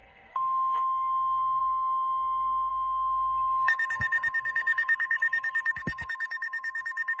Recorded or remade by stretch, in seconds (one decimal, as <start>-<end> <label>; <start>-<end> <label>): 0.0-7.2 remade

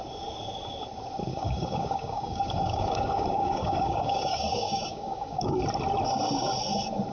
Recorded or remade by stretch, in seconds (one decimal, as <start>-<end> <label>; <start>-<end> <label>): 0.0-1.3 recorded; 1.3-5.6 remade; 5.6-7.1 recorded

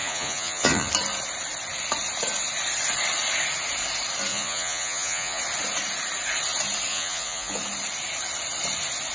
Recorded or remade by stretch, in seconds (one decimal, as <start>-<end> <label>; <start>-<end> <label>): 0.0-0.9 remade; 0.9-4.3 recorded; 4.3-5.4 remade; 5.4-6.9 recorded; 6.9-7.6 remade; 7.6-9.1 recorded

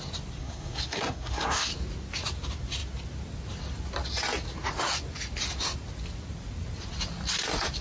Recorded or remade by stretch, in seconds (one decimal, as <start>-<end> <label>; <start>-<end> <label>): 0.0-0.4 recorded; 0.4-1.7 remade; 1.7-7.8 recorded

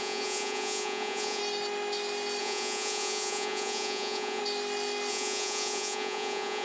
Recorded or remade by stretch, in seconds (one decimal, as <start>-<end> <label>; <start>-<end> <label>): 0.0-1.4 remade; 1.4-2.4 recorded; 2.4-4.4 remade; 4.4-5.1 recorded; 5.1-6.6 remade